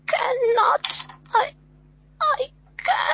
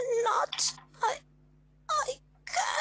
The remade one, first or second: first